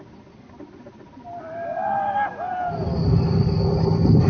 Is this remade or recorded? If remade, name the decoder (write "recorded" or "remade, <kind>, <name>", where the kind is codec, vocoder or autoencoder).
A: recorded